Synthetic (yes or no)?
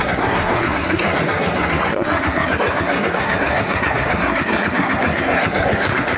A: yes